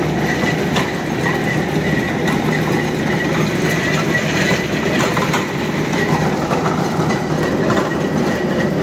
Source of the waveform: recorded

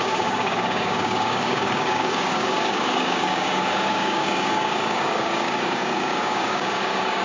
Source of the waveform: remade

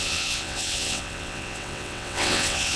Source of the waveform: remade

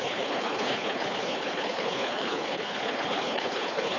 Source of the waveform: remade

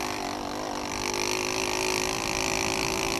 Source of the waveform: recorded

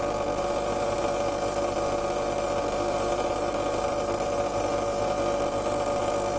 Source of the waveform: recorded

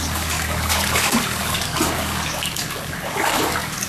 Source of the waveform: remade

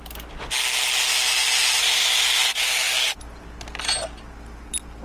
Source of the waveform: recorded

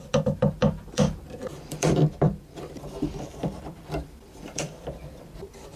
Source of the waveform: remade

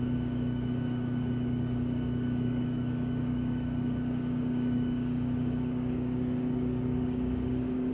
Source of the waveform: remade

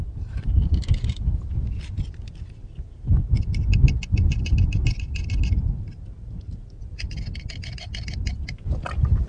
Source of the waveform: recorded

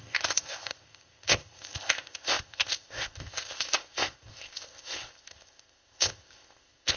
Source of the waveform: remade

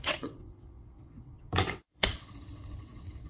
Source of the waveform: remade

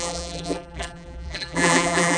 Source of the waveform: remade